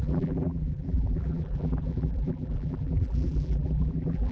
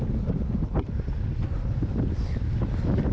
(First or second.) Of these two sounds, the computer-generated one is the first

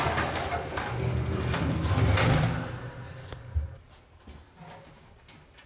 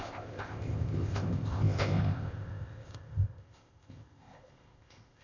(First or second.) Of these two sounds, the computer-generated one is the second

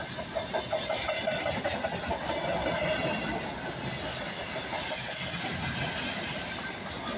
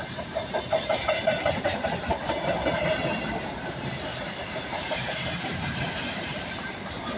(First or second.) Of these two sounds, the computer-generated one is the second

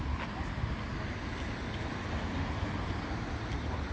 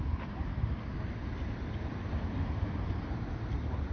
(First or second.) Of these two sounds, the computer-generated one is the second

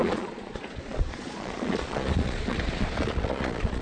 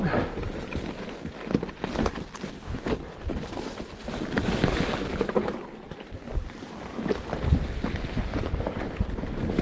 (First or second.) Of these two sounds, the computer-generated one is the first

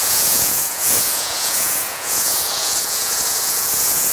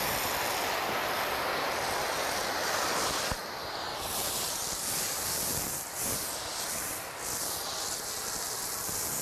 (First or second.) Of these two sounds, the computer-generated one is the first